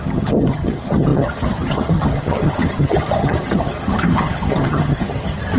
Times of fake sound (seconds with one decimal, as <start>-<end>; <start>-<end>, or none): 0.0-5.6